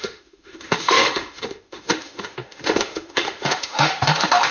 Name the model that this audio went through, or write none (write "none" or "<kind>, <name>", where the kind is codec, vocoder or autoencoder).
autoencoder, DAC-VAE